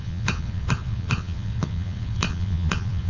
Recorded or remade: remade